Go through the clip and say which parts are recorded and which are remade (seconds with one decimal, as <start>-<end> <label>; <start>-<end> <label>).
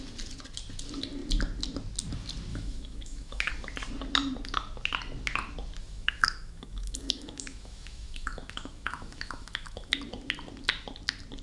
0.0-2.5 recorded; 2.5-3.5 remade; 3.5-5.8 recorded; 5.8-10.0 remade; 10.0-11.4 recorded